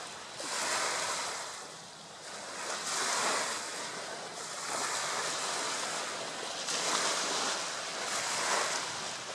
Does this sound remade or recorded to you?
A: recorded